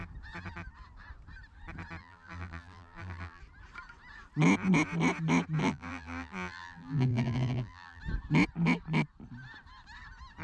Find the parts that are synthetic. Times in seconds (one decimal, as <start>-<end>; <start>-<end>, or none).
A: 2.0-3.4; 5.6-8.0